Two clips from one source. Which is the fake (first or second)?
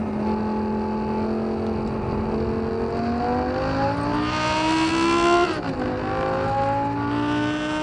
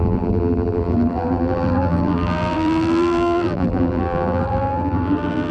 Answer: second